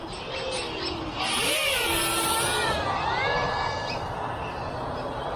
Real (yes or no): yes